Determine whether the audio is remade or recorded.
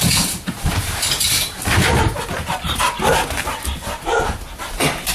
recorded